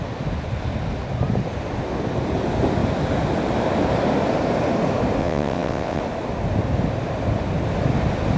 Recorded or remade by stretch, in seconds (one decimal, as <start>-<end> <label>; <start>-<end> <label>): 0.0-5.2 recorded; 5.2-6.0 remade; 6.0-8.4 recorded